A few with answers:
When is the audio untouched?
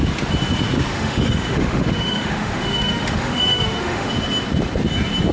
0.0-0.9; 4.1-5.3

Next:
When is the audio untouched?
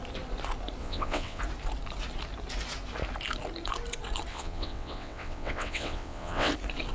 0.0-0.8; 1.4-4.3; 6.5-6.9